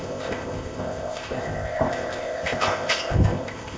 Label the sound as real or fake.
fake